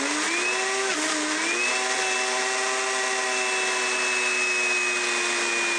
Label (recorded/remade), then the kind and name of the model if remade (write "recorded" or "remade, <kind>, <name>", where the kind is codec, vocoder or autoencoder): recorded